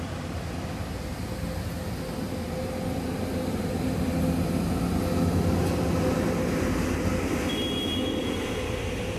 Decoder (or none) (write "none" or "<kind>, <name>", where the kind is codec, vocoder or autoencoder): none